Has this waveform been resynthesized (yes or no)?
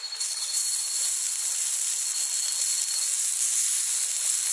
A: no